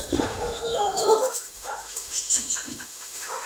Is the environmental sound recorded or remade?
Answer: remade